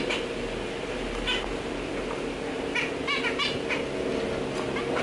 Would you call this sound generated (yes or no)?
no